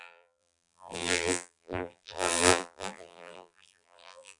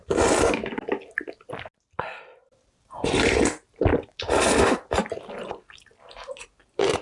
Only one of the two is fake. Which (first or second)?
first